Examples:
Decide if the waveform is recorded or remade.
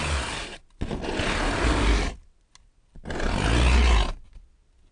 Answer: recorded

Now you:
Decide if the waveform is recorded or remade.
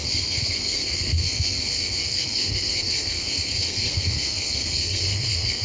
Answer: remade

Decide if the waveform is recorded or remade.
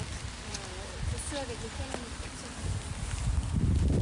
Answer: recorded